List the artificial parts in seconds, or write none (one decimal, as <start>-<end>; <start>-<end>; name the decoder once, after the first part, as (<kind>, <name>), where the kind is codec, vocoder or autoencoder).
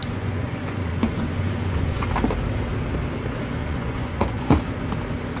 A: 0.0-2.1 (vocoder, Vocos); 3.6-4.6